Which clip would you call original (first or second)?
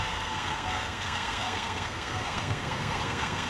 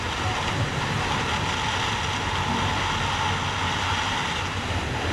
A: second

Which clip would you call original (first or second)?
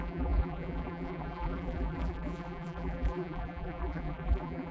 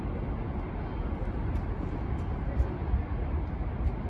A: second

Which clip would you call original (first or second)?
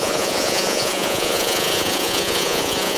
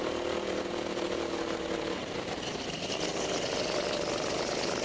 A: second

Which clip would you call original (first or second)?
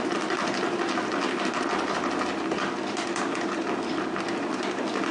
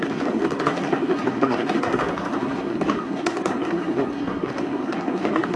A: first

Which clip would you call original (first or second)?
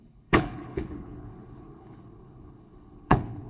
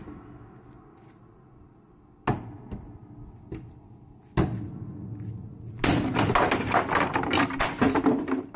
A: second